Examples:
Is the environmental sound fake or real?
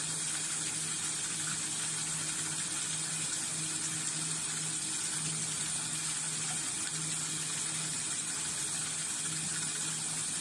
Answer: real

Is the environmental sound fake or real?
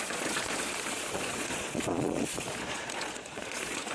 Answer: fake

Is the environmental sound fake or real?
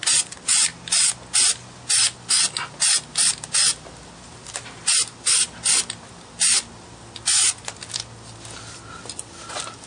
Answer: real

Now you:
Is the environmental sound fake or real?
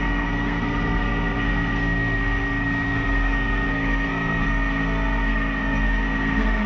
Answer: fake